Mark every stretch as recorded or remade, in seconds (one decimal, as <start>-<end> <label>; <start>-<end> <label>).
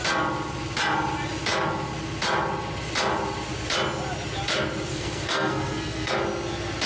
0.0-4.9 recorded; 4.9-6.1 remade; 6.1-6.9 recorded